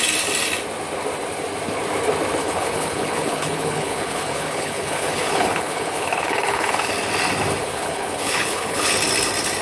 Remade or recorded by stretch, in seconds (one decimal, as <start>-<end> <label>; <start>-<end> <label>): 0.0-2.4 recorded; 2.4-6.9 remade; 6.9-7.6 recorded; 7.6-8.9 remade; 8.9-9.6 recorded